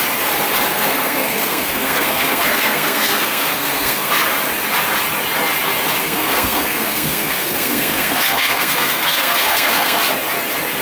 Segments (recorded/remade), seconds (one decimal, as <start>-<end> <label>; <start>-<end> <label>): 0.0-0.7 recorded; 0.7-4.1 remade; 4.1-6.0 recorded; 6.0-10.0 remade; 10.0-10.8 recorded